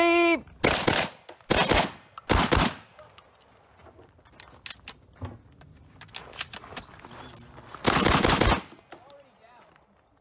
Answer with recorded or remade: recorded